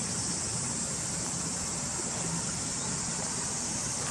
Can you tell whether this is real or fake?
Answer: fake